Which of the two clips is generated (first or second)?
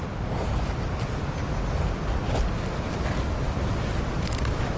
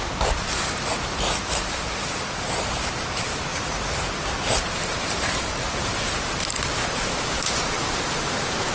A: second